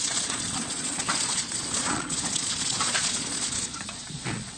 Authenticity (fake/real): fake